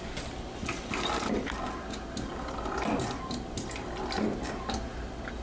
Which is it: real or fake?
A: real